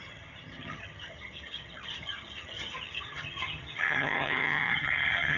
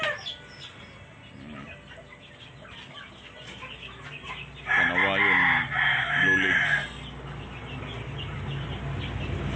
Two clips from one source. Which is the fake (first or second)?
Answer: first